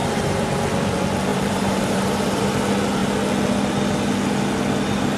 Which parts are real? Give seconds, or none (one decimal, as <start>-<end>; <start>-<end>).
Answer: 0.6-1.3; 2.4-5.2